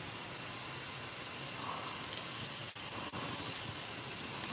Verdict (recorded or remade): recorded